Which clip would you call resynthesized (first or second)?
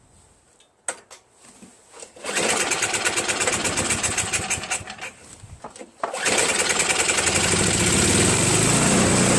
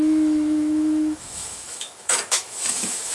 second